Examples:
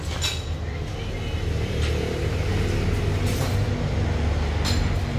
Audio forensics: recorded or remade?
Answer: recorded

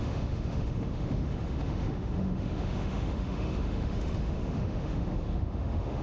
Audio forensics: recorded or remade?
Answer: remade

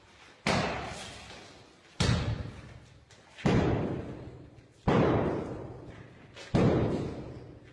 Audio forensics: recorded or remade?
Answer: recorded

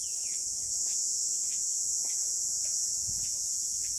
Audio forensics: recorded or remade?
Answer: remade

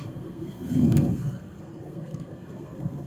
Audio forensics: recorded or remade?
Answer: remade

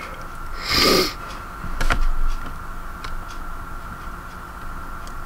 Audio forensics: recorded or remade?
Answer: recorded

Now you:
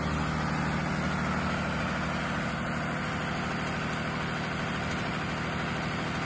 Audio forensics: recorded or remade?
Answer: recorded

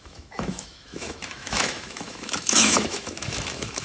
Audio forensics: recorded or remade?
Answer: remade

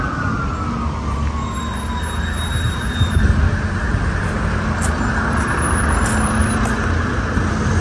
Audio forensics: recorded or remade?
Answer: recorded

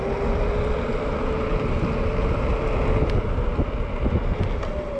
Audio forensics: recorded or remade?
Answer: recorded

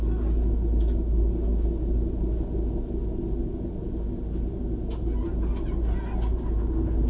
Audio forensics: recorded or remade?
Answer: recorded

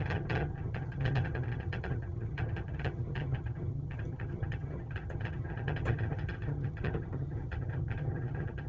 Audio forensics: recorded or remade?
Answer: remade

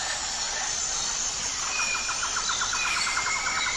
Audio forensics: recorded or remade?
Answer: recorded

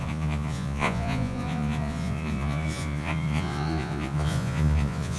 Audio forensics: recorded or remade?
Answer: remade